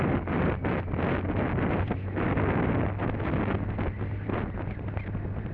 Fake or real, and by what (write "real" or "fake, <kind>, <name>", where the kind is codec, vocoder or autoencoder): real